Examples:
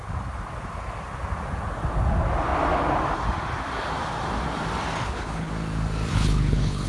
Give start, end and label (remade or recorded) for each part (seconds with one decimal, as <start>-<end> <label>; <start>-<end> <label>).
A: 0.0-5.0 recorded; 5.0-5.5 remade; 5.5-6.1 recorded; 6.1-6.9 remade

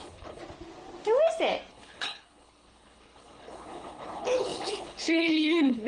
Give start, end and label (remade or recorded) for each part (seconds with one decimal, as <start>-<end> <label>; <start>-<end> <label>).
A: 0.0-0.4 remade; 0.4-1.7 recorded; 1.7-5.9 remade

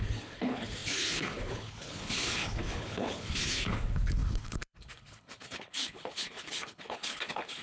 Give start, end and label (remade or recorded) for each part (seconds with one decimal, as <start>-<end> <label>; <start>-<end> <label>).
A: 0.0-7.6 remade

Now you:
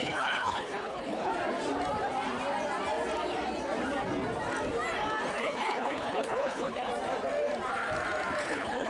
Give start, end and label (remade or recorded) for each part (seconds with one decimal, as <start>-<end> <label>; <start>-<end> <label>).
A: 0.0-1.3 remade; 1.3-5.3 recorded; 5.3-6.9 remade; 6.9-8.4 recorded; 8.4-8.9 remade

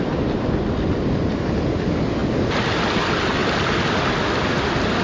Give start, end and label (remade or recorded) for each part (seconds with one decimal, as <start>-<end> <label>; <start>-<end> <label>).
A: 0.0-5.0 recorded